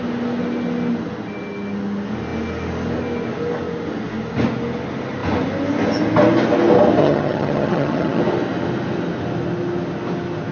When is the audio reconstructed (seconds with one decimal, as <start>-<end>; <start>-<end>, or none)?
7.0-8.2